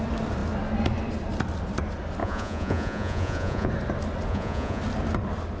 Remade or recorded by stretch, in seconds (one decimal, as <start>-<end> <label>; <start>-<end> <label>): 0.0-2.2 recorded; 2.2-3.7 remade; 3.7-4.3 recorded; 4.3-4.8 remade; 4.8-5.6 recorded